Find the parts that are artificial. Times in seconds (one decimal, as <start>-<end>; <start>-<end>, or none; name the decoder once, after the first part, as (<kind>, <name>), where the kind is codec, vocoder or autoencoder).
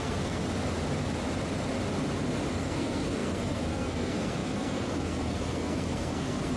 0.0-0.4 (codec, SNAC); 2.5-6.6